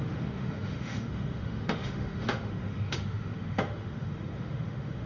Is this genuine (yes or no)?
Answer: no